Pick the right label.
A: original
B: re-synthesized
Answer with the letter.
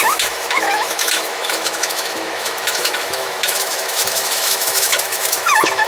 B